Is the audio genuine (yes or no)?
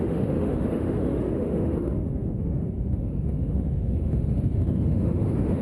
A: no